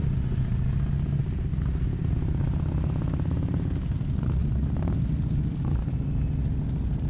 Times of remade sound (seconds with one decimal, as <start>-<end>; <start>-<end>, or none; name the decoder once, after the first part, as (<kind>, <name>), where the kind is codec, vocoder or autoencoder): none